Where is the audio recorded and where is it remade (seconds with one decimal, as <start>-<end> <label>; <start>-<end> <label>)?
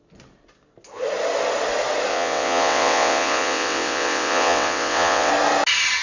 0.0-2.1 recorded; 2.1-5.3 remade; 5.3-6.0 recorded